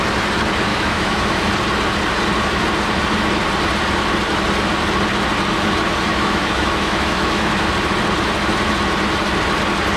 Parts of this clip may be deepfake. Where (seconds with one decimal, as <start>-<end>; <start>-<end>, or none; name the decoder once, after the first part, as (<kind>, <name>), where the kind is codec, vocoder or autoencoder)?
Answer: 0.7-1.5 (autoencoder, DAC-VAE); 6.1-7.7